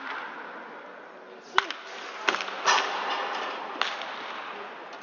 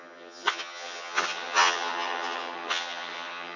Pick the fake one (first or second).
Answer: second